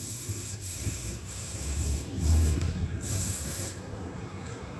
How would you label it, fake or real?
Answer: fake